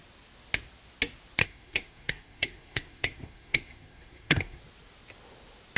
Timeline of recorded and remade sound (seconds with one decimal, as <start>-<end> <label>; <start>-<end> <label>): 0.0-1.4 recorded; 1.4-4.6 remade; 4.6-5.8 recorded